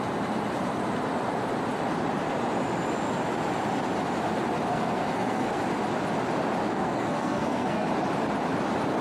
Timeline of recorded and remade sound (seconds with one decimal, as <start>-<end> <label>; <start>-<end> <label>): 0.0-4.7 recorded; 4.7-5.6 remade; 5.6-6.7 recorded; 6.7-7.9 remade; 7.9-9.0 recorded